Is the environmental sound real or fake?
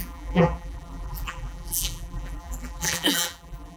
fake